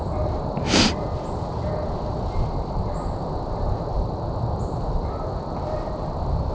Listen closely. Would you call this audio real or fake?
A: real